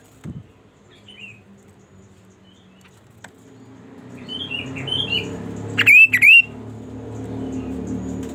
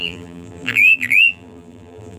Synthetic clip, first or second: second